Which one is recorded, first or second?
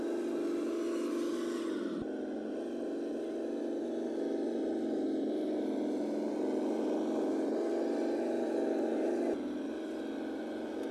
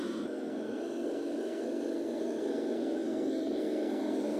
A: first